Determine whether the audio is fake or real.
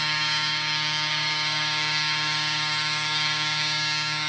fake